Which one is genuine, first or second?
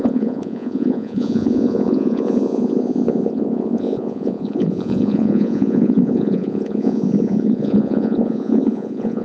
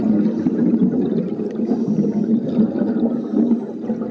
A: second